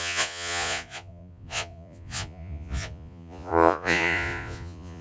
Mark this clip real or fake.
fake